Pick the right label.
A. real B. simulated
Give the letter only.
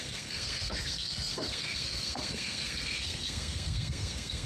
B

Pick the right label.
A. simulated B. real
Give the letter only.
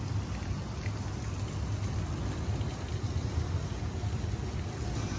B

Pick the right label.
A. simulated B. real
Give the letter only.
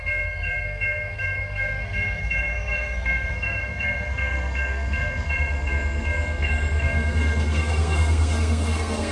A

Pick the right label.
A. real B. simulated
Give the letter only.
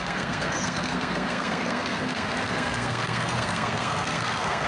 B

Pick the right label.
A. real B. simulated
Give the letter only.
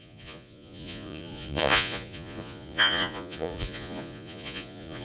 B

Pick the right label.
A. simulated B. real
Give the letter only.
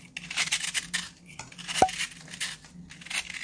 B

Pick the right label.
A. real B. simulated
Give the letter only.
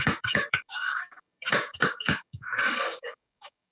B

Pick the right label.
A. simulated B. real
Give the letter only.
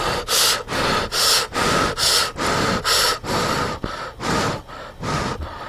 B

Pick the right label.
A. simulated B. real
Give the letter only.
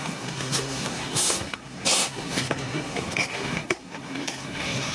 A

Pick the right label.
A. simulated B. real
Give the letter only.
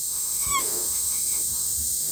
A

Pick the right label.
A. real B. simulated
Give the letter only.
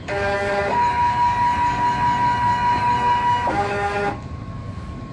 B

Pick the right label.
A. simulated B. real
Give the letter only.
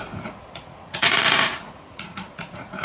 A